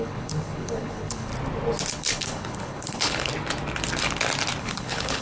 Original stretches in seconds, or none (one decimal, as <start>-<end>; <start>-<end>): 1.3-1.9; 3.3-4.6